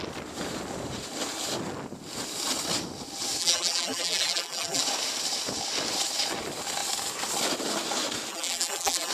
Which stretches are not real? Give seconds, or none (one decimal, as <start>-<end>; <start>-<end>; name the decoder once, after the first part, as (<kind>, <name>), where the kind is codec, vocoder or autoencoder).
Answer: 3.4-4.8 (vocoder, BigVGAN v2); 8.3-9.1